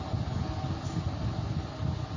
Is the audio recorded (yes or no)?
yes